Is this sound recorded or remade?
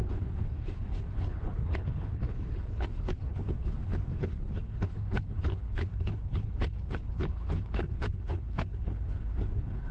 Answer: remade